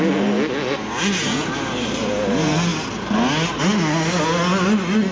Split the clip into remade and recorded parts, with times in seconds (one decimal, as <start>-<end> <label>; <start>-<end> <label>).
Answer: 0.0-0.8 recorded; 0.8-2.1 remade; 2.1-5.1 recorded